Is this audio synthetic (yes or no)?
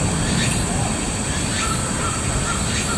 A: no